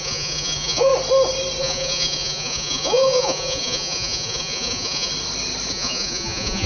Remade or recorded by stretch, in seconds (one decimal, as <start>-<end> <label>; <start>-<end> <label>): 0.0-0.9 remade; 0.9-1.6 recorded; 1.6-5.1 remade; 5.1-5.7 recorded; 5.7-6.7 remade